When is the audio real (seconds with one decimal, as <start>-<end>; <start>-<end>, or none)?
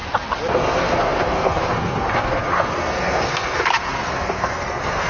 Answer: 0.0-0.5